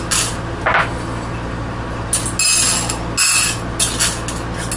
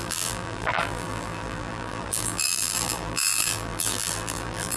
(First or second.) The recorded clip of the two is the first